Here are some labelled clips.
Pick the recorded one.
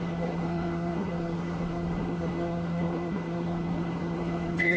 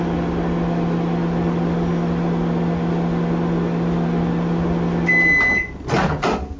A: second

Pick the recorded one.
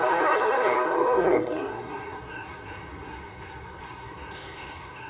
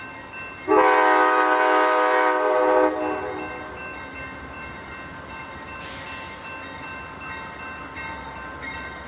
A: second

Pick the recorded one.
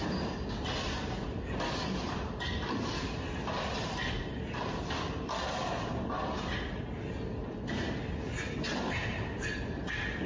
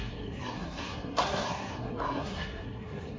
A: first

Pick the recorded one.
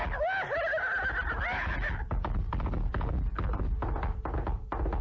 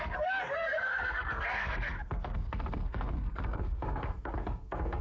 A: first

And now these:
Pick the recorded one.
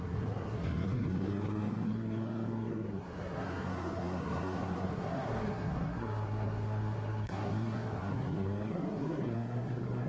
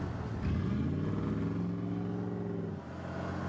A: second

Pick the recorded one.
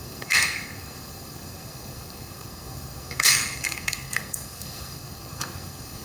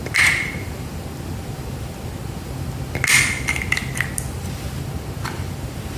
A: second